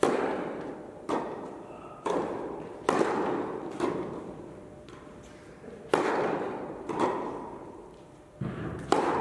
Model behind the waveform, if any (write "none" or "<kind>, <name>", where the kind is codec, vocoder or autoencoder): none